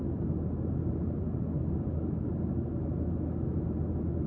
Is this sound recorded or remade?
recorded